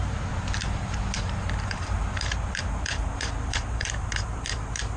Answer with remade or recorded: remade